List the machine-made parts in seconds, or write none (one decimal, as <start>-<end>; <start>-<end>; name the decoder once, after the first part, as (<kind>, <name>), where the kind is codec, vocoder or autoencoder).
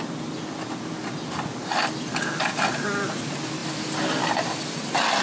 1.6-2.1 (vocoder, BigVGAN v2); 3.6-5.2